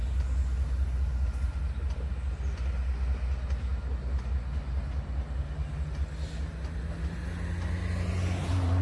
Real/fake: real